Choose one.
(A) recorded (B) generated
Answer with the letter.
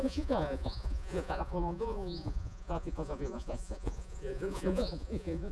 B